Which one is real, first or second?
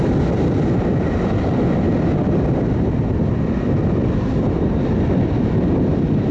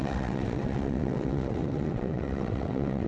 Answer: first